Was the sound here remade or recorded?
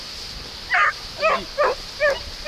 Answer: recorded